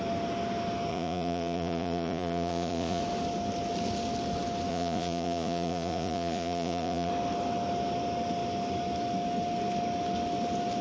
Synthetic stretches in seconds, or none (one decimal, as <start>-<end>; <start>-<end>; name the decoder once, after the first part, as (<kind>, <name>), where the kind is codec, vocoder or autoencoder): 0.9-3.0 (vocoder, Vocos); 4.7-7.1